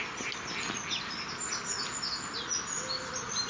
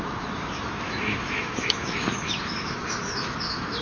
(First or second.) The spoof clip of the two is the second